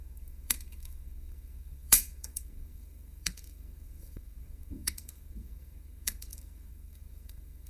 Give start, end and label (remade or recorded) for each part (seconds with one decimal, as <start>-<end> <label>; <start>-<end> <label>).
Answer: 0.0-7.7 remade